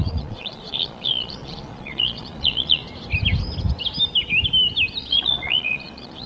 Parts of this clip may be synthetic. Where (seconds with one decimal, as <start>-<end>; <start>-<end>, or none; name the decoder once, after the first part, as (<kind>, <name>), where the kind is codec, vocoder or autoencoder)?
0.0-2.8 (vocoder, Vocos); 5.0-6.3